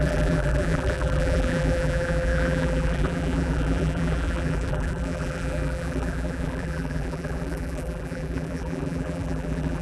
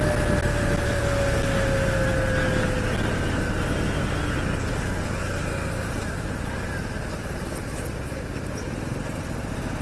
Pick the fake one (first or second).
first